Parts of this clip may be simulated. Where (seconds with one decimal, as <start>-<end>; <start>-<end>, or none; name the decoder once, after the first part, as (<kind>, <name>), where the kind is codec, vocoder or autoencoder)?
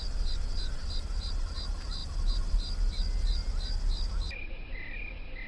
none